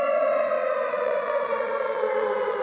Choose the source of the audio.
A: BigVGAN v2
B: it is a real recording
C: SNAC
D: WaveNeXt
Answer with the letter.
D